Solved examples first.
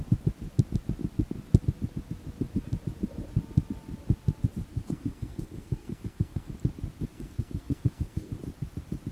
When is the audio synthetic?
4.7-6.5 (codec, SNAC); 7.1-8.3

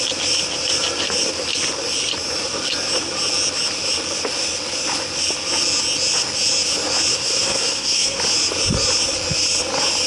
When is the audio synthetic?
7.1-8.2 (codec, SNAC)

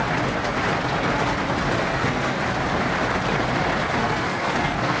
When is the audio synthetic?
1.9-2.4 (codec, SNAC); 4.0-5.0

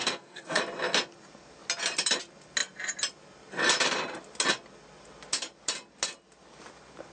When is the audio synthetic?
0.0-0.6 (codec, SNAC)

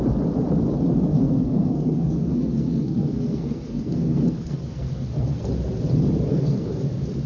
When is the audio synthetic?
1.1-5.5 (codec, SNAC); 6.3-6.8